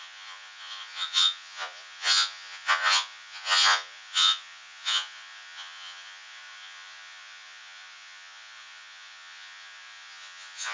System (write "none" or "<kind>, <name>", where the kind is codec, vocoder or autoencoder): vocoder, Vocos